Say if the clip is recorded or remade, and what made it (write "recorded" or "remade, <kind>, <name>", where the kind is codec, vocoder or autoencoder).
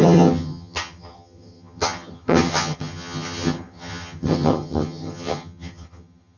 remade, vocoder, HiFi-GAN